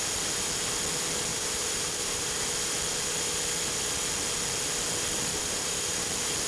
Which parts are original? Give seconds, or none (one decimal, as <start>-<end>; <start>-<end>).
0.0-1.3; 2.4-5.3; 6.1-6.5